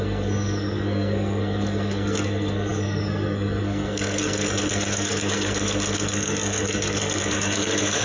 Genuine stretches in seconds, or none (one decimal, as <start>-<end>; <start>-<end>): none